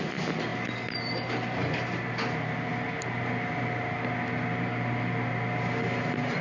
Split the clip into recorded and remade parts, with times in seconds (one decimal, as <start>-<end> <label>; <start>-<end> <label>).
0.0-6.4 recorded